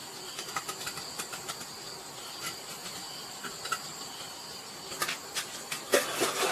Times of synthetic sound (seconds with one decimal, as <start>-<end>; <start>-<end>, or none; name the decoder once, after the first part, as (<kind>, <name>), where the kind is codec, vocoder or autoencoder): 0.0-0.5 (vocoder, BigVGAN v2)